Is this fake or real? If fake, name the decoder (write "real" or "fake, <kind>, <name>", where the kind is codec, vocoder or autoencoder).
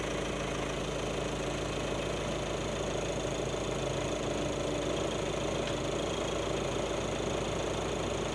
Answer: real